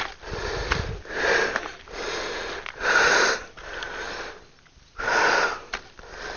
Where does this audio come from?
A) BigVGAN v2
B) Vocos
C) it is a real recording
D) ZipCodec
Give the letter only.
C